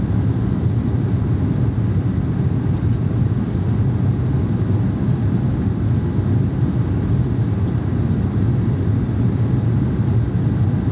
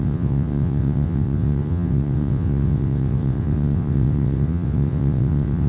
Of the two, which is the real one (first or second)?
first